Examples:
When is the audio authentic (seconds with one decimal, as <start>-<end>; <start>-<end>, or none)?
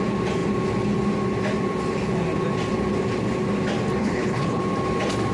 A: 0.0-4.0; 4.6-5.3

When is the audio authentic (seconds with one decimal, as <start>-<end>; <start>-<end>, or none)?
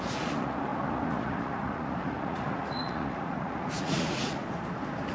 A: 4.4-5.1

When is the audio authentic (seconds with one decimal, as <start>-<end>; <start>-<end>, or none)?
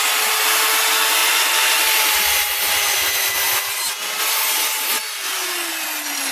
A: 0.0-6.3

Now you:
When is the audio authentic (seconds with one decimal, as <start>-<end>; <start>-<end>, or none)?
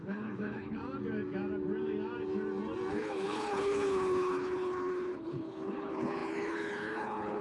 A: 0.8-2.9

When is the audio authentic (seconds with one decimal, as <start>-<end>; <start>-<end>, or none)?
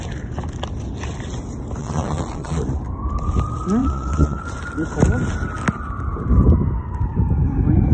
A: 0.0-1.8; 2.6-3.8; 4.4-7.9